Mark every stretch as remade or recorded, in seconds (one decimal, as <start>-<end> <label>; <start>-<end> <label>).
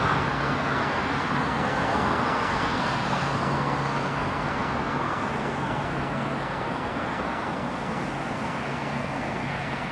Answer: 0.0-9.9 remade